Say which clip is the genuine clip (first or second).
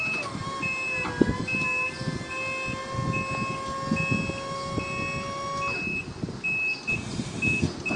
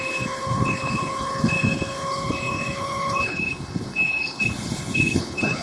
first